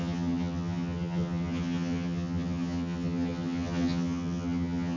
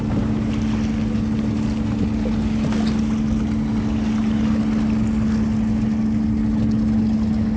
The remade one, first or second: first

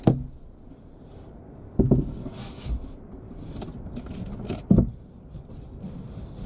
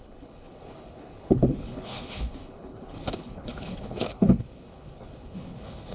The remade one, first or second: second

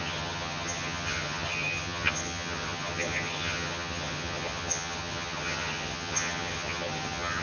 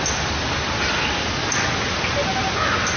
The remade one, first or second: first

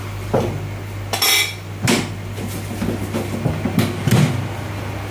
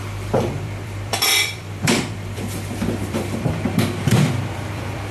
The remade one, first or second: second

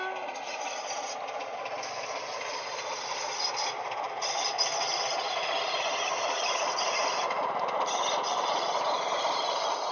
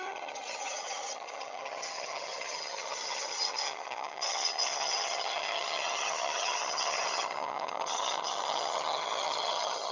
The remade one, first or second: second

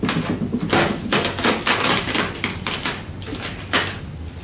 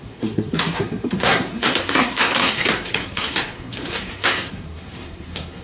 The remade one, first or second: second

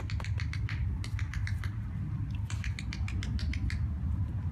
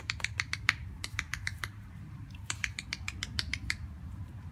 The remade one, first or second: second